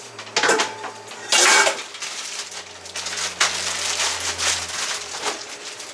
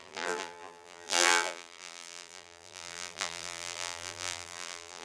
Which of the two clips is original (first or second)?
first